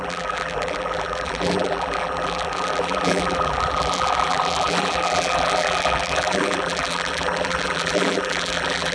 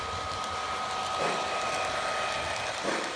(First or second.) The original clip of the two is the second